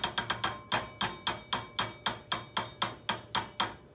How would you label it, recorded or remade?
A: recorded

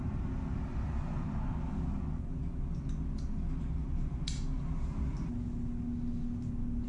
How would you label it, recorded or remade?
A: recorded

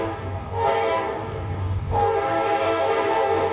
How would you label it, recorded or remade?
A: remade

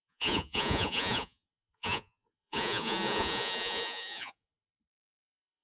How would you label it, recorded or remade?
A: remade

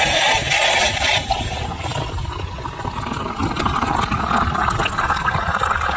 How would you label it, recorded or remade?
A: recorded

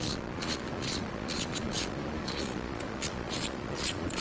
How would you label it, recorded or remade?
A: remade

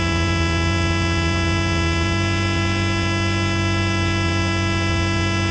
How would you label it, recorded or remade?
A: recorded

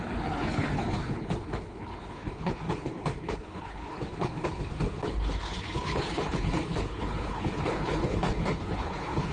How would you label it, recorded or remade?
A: remade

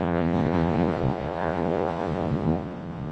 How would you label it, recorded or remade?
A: remade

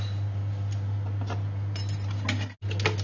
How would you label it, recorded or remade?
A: recorded